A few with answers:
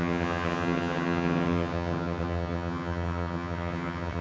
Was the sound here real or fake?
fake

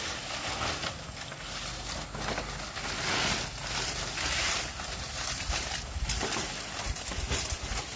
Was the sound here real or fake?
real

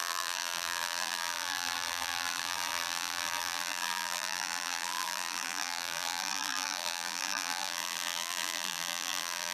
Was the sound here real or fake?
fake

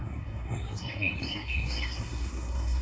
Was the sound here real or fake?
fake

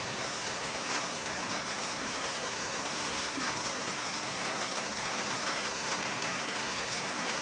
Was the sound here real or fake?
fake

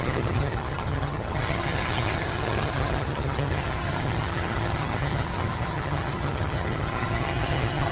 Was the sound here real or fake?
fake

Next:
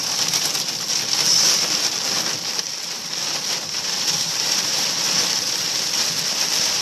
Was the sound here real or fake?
fake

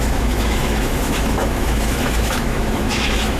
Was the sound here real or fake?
fake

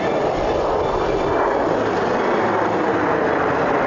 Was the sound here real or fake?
real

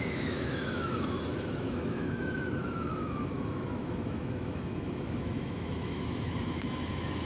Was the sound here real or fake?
fake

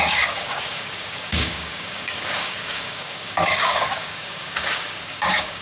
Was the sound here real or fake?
fake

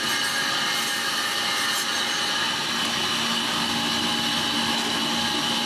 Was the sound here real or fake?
real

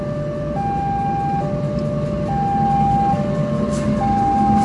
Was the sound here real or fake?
real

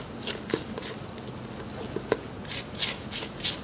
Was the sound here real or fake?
real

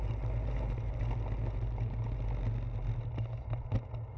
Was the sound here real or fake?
real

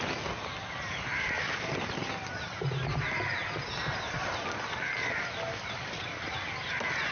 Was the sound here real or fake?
real